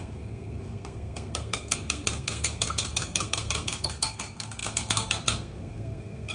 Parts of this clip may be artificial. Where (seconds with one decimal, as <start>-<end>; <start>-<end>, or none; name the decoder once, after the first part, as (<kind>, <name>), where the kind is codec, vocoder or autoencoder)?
0.0-6.3 (codec, SNAC)